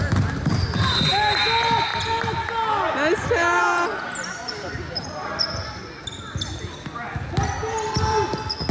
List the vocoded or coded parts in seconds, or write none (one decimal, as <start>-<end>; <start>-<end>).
none